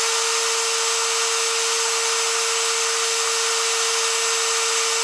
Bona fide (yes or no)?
yes